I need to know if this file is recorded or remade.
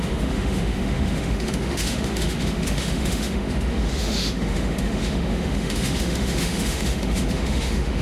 remade